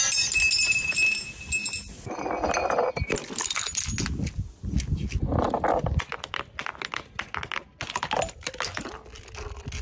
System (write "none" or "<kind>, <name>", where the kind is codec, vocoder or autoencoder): none